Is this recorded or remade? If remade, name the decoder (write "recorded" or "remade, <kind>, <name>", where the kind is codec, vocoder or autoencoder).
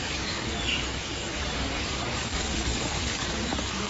remade, codec, DAC